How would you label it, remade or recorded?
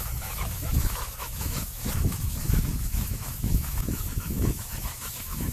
remade